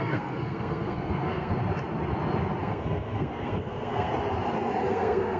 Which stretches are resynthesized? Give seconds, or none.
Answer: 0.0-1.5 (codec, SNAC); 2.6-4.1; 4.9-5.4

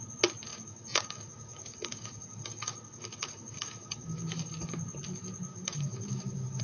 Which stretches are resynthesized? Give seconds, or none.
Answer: 0.5-4.5 (codec, DAC); 5.5-6.6

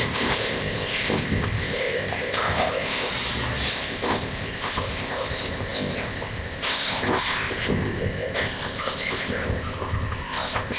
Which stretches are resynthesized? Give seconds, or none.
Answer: 0.0-3.1 (codec, ZipCodec); 3.7-10.8

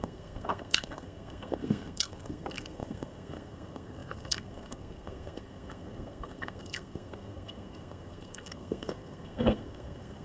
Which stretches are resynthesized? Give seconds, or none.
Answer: 0.0-10.2 (codec, SNAC)

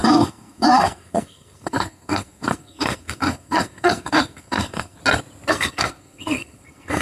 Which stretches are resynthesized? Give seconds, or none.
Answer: 0.0-5.0 (codec, SNAC); 5.5-7.0

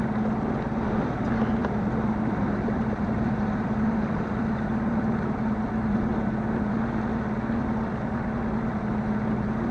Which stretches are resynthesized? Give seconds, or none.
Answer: 1.6-5.7 (vocoder, BigVGAN v2); 7.6-8.3